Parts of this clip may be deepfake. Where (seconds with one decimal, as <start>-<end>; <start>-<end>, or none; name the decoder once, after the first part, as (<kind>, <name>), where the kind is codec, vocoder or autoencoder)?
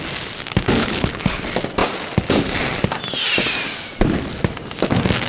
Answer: 0.8-1.4 (codec, HILCodec)